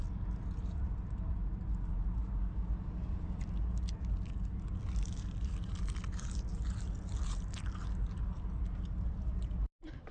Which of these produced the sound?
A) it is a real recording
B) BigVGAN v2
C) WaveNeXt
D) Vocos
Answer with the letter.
B